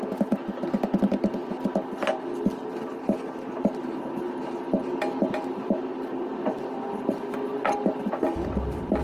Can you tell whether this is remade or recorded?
recorded